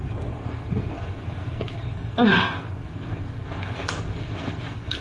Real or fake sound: fake